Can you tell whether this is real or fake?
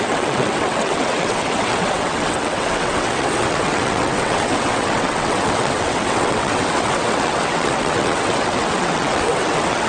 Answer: fake